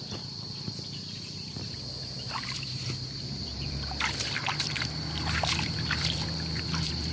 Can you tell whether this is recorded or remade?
remade